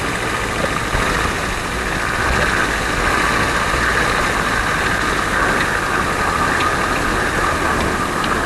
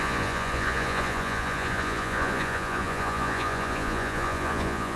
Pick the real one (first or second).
first